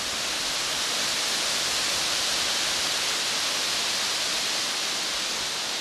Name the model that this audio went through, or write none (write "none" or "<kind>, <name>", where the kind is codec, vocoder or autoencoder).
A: none